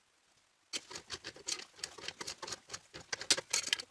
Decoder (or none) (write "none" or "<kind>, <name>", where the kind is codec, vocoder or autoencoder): none